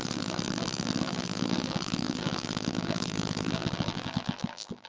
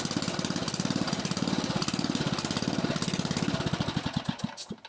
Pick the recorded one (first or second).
second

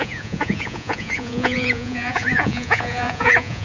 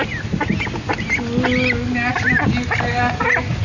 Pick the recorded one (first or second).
second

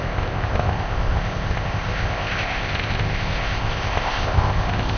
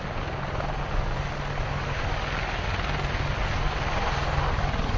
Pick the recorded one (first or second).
second